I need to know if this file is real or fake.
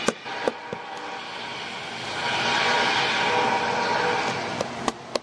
real